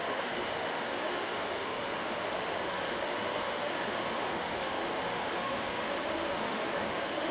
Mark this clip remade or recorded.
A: remade